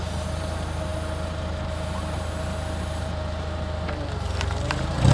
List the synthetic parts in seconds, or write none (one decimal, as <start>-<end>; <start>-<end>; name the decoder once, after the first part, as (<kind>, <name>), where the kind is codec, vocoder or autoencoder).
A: 0.0-5.1 (vocoder, BigVGAN v2)